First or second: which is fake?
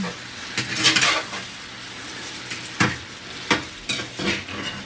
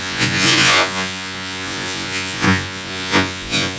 second